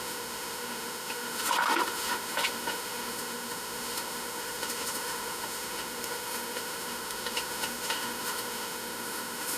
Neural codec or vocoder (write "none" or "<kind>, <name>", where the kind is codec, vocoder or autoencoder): autoencoder, DAC-VAE